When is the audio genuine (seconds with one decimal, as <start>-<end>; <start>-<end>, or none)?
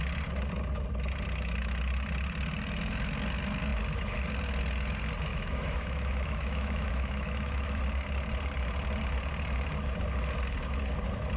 0.0-5.3; 7.8-11.4